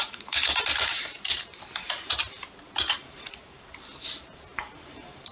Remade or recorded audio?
remade